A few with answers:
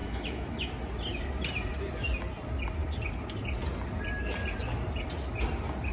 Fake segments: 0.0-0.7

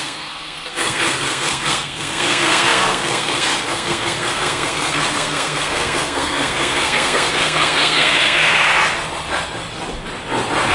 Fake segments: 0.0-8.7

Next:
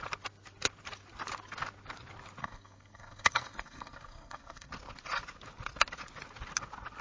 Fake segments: 2.4-4.7